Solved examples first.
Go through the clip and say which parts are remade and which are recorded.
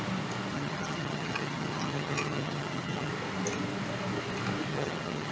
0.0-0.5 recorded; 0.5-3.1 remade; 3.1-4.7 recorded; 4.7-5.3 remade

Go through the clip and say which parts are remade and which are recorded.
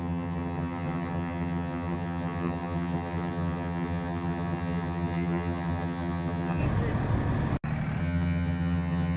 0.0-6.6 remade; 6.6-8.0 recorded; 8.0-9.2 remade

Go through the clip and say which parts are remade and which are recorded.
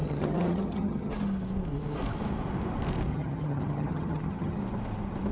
0.0-1.1 remade; 1.1-3.1 recorded; 3.1-4.6 remade; 4.6-5.3 recorded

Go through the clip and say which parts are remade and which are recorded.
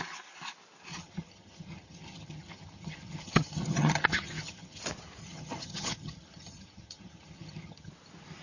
0.0-0.9 recorded; 0.9-4.8 remade; 4.8-5.2 recorded; 5.2-7.9 remade; 7.9-8.4 recorded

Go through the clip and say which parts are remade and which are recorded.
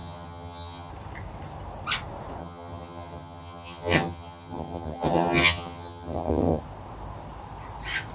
0.0-0.9 remade; 0.9-2.4 recorded; 2.4-6.6 remade; 6.6-8.1 recorded